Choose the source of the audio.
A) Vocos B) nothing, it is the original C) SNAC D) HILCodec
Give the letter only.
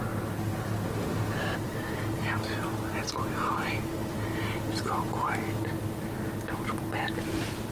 B